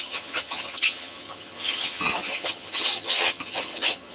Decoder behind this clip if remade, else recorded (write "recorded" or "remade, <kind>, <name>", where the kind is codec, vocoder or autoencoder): remade, vocoder, HiFi-GAN